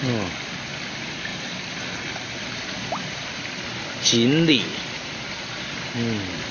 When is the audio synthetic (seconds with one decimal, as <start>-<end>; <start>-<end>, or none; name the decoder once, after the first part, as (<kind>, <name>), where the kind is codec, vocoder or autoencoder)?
1.3-3.4 (vocoder, BigVGAN v2); 4.7-5.2